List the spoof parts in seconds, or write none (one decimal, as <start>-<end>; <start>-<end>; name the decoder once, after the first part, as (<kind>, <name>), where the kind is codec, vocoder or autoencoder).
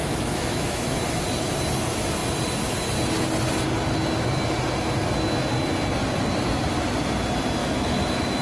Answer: 0.0-1.2 (autoencoder, DAC-VAE); 7.6-8.4